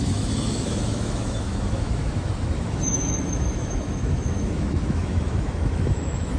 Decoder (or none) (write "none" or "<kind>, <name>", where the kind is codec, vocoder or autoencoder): autoencoder, DAC-VAE